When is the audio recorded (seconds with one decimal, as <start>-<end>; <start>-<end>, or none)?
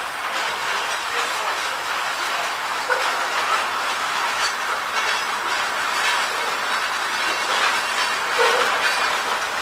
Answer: 0.0-1.0; 4.9-9.6